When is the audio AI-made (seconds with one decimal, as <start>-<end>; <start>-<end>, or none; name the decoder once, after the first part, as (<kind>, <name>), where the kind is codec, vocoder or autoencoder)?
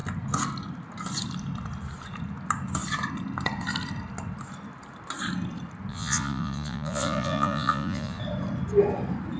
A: 5.9-8.2 (vocoder, Vocos)